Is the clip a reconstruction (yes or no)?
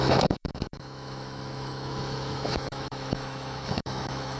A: yes